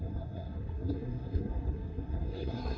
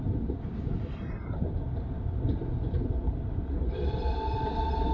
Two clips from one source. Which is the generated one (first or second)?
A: first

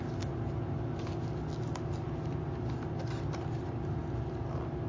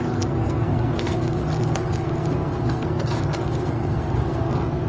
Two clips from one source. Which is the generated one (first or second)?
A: second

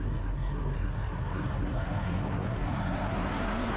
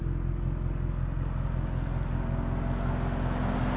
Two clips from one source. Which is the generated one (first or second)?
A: first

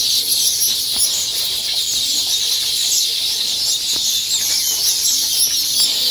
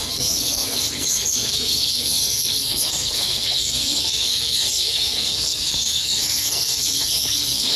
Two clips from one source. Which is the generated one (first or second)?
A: second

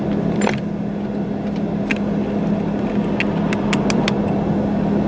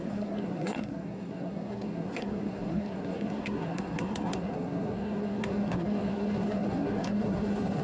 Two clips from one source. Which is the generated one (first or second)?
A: second